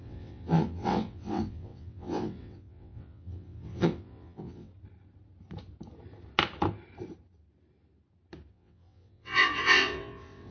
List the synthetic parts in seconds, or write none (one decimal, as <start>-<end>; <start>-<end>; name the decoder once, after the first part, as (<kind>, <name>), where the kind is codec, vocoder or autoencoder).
0.0-4.7 (vocoder, WaveNeXt); 8.5-10.5